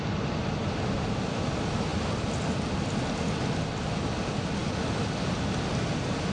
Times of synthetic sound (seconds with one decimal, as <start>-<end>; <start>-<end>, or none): none